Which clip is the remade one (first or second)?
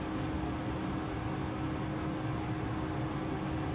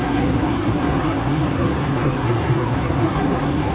second